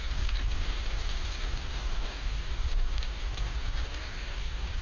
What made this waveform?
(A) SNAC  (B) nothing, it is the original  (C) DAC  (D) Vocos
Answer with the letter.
C